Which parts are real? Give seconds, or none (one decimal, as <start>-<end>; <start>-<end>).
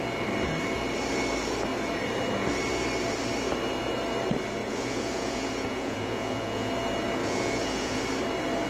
0.0-4.6; 6.7-7.2; 8.0-8.7